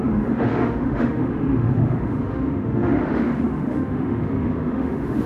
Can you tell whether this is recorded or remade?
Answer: remade